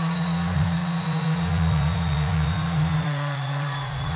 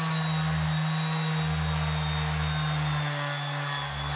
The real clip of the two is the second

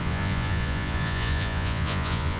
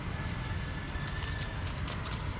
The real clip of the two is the second